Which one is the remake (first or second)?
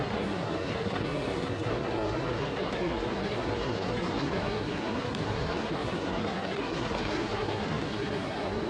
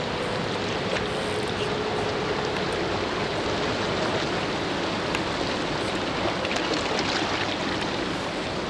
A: first